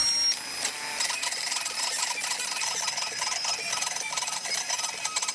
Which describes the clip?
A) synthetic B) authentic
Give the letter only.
B